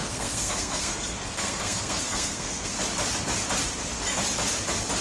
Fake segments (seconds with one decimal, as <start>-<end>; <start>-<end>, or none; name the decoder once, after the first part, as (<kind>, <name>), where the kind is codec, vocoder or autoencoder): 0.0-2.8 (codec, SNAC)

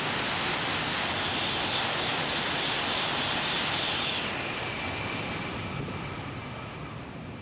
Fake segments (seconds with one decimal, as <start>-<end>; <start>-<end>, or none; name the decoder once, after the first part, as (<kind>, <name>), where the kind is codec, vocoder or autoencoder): none

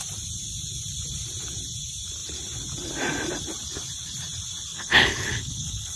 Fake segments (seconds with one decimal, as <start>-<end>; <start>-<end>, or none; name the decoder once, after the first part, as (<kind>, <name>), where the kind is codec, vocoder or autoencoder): 4.7-6.0 (codec, HILCodec)

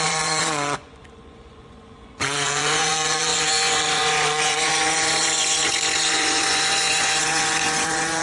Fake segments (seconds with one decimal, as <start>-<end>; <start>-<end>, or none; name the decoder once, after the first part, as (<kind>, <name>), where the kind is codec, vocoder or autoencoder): 0.0-8.2 (vocoder, Vocos)

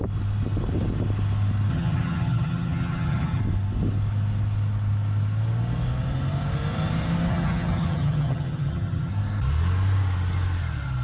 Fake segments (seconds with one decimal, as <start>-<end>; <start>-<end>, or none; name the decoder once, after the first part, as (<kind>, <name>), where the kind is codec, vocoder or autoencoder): 1.7-3.4 (vocoder, HiFi-GAN); 7.3-9.1

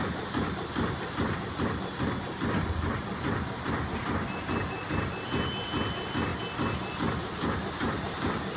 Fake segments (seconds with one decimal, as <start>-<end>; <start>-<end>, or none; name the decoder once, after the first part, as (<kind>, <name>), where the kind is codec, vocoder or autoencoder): 0.0-6.3 (vocoder, BigVGAN v2); 7.7-8.6

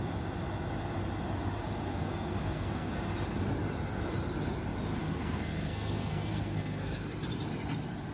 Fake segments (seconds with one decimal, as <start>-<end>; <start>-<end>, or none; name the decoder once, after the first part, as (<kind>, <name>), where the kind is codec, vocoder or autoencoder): 1.9-3.0 (codec, SNAC); 5.0-7.1

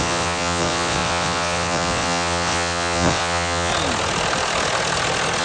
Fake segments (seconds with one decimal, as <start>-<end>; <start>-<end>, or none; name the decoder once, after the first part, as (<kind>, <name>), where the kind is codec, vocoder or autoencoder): 0.0-3.7 (vocoder, WaveNeXt)